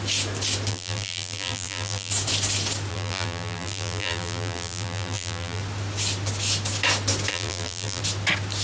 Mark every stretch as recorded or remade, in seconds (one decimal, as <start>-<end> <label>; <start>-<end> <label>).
0.0-0.7 recorded; 0.7-2.1 remade; 2.1-2.9 recorded; 2.9-5.6 remade; 5.6-7.3 recorded; 7.3-8.0 remade; 8.0-8.6 recorded